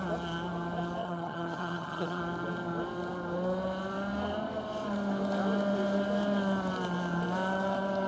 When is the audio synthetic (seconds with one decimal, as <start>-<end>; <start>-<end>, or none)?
1.0-2.2